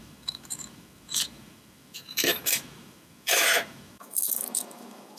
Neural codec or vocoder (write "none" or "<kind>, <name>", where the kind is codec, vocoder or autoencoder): autoencoder, DAC-VAE